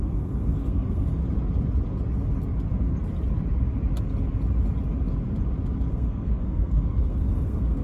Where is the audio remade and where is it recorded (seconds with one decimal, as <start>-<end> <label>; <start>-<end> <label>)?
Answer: 0.0-1.2 remade; 1.2-5.9 recorded; 5.9-7.8 remade